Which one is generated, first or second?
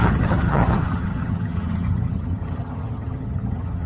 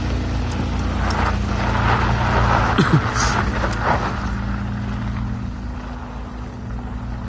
first